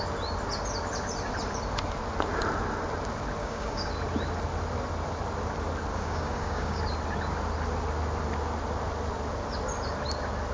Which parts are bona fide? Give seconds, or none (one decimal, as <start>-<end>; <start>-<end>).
0.0-3.4; 3.9-5.9; 6.8-10.5